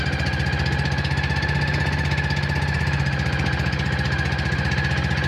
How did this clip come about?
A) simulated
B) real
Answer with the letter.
B